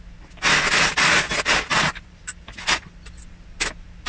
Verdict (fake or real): real